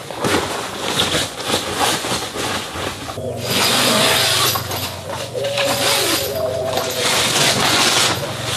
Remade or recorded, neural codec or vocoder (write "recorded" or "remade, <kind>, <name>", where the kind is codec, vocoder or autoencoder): remade, vocoder, Vocos